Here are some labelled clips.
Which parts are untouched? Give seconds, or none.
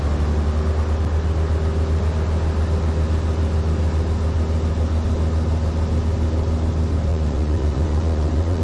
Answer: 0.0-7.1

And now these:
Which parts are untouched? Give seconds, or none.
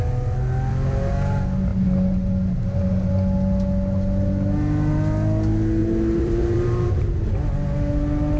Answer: 0.0-5.8; 7.1-8.4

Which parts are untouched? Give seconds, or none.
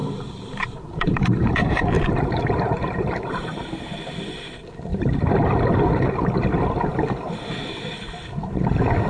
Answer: 3.7-9.1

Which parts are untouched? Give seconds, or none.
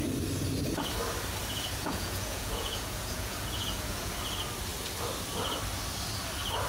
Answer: 0.0-1.8; 4.1-6.7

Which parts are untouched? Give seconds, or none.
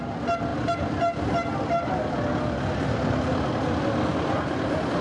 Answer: 0.0-5.0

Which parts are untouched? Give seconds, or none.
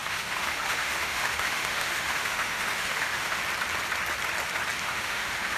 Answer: 3.4-4.8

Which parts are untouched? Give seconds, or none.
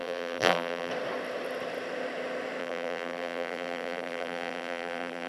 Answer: 0.9-2.6